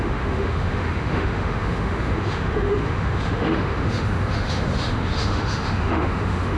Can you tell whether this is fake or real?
fake